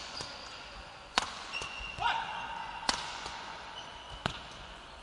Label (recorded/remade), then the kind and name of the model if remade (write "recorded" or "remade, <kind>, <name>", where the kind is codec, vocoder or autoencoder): remade, vocoder, Vocos